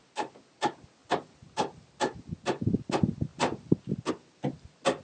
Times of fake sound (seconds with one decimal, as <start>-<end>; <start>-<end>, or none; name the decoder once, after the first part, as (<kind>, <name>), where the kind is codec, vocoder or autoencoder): none